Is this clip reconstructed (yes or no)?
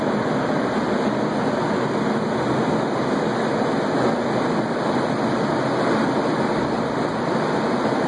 no